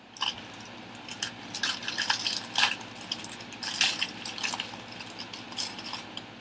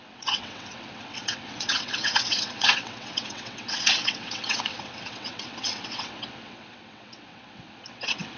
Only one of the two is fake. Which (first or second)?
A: second